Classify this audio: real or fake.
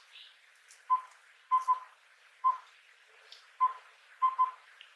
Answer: fake